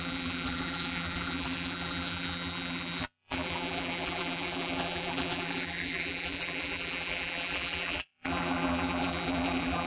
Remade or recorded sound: remade